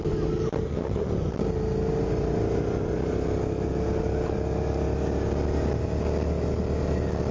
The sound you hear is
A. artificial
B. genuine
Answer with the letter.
B